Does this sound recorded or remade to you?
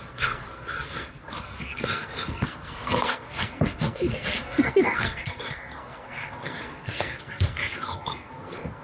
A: remade